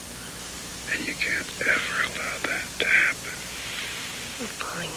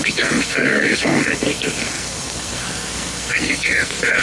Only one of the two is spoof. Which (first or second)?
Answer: second